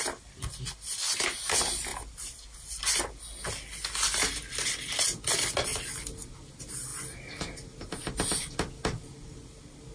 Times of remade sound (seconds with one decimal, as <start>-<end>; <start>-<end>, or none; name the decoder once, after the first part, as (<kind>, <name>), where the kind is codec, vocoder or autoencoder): none